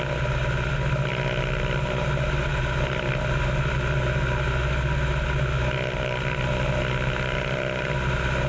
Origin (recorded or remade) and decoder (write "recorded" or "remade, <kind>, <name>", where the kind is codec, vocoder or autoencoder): recorded